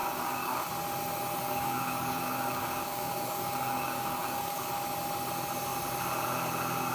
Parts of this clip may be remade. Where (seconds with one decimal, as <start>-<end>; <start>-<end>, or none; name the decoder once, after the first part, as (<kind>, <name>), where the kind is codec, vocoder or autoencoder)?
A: 0.0-0.7 (codec, DAC); 1.4-4.7